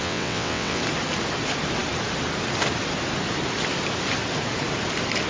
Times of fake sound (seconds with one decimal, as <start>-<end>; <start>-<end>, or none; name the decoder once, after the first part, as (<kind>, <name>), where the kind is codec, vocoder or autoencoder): 0.0-0.8 (vocoder, WaveNeXt)